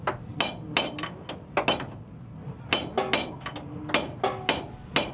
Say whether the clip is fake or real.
real